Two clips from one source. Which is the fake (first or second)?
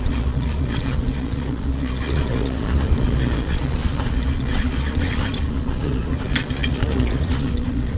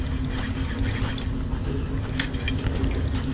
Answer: first